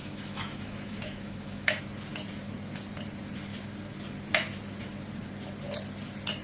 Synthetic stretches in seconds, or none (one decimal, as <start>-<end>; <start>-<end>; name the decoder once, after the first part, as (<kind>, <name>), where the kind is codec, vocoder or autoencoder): 0.0-1.8 (autoencoder, DAC-VAE)